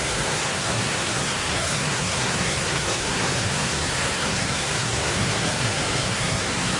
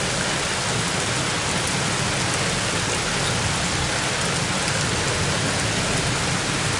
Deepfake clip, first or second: first